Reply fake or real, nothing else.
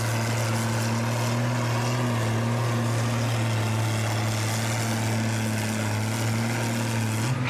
real